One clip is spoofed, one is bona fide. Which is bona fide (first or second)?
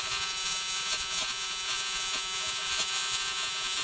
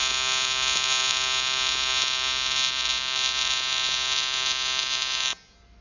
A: second